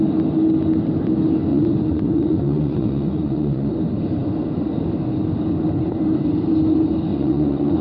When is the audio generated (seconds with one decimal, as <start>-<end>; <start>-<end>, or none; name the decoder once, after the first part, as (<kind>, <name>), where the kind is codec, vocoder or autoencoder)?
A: 1.5-3.7 (vocoder, Vocos); 7.1-7.8